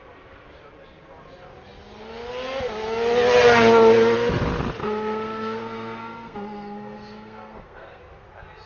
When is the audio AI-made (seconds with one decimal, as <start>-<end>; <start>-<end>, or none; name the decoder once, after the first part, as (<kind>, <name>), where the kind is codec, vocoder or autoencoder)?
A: 4.8-8.0 (codec, SNAC)